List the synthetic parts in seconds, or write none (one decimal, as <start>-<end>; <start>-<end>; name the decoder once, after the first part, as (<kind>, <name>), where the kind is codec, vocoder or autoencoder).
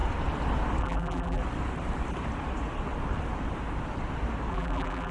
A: 0.8-1.4 (vocoder, BigVGAN v2); 4.5-5.1